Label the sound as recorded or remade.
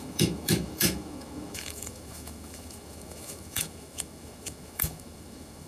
remade